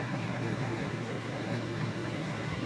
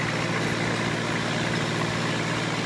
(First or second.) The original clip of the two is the second